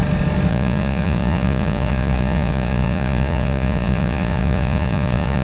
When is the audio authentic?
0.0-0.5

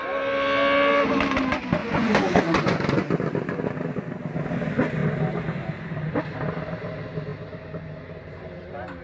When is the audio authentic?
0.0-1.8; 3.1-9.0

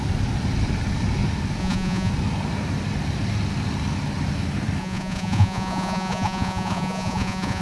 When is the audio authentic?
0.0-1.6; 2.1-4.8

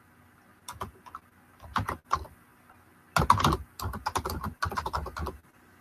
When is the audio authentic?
0.0-5.8

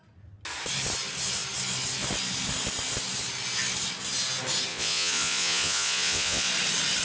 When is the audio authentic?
0.0-4.7; 6.5-7.0

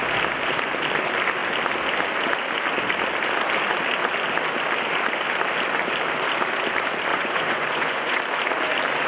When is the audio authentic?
0.0-7.1; 8.2-9.1

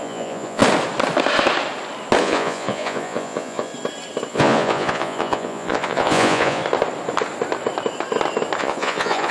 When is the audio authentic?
0.6-2.2; 3.7-4.3; 6.6-8.6